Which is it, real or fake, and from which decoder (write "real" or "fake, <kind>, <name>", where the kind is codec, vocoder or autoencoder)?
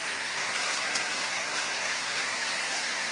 fake, codec, SNAC